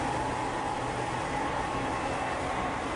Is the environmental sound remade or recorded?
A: recorded